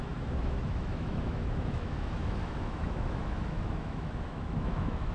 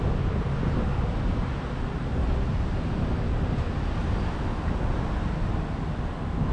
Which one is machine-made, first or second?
first